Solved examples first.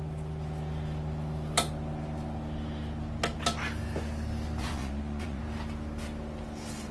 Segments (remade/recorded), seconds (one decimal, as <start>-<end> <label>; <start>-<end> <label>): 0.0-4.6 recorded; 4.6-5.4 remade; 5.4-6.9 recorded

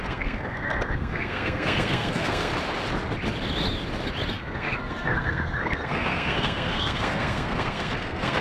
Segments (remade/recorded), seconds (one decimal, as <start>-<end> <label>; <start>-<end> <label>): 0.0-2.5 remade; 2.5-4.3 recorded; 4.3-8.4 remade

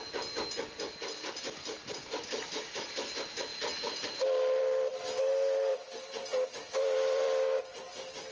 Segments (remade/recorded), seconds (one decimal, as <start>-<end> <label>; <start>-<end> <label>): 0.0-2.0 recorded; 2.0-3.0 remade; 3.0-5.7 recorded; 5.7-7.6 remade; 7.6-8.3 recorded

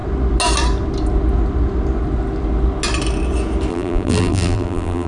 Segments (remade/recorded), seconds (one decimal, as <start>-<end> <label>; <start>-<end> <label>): 0.0-3.7 recorded; 3.7-5.1 remade